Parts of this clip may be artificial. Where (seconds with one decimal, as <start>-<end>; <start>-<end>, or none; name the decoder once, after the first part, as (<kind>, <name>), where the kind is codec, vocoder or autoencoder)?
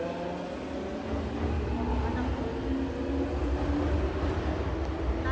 none